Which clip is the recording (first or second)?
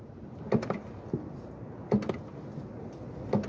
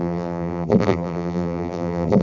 first